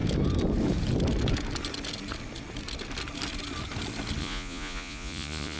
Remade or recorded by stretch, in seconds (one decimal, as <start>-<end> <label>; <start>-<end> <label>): 0.0-4.2 recorded; 4.2-5.6 remade